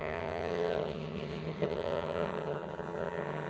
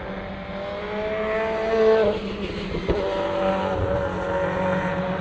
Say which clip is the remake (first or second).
first